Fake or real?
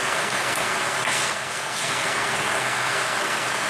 fake